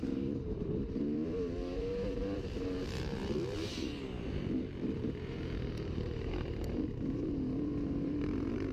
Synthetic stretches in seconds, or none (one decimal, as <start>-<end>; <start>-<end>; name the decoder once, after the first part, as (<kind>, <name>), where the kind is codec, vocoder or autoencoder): 0.0-3.2 (vocoder, BigVGAN v2); 4.6-8.7